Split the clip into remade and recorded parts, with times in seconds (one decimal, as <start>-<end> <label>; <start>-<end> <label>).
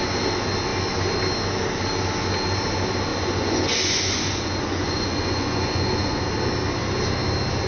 0.0-3.1 recorded; 3.1-6.2 remade; 6.2-7.7 recorded